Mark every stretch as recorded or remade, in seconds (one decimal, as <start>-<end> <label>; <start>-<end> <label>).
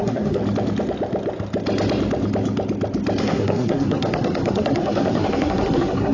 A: 0.0-0.4 remade; 0.4-3.2 recorded; 3.2-6.1 remade